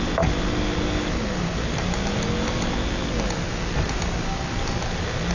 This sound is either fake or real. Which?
real